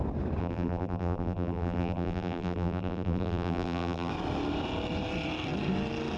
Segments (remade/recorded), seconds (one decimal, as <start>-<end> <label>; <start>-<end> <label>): 0.0-0.4 recorded; 0.4-4.1 remade; 4.1-6.2 recorded

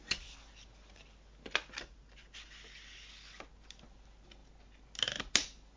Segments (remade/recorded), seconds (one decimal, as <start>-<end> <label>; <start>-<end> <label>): 0.0-5.8 recorded